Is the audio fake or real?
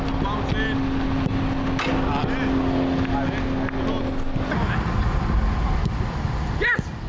real